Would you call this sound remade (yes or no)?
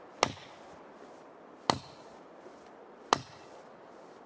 no